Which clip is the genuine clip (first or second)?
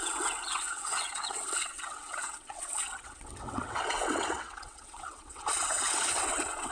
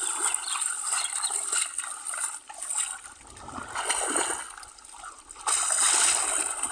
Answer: second